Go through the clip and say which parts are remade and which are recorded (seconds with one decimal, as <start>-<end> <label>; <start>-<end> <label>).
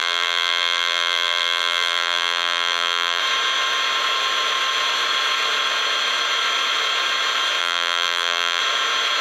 0.0-3.2 remade; 3.2-7.6 recorded; 7.6-8.6 remade; 8.6-9.2 recorded